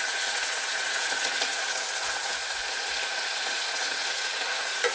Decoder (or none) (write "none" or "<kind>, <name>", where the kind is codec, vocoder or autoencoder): vocoder, Vocos